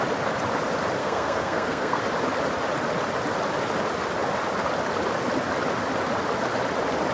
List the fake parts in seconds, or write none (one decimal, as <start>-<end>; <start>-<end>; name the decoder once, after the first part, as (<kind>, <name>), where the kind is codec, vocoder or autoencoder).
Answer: 1.0-2.0 (codec, SNAC)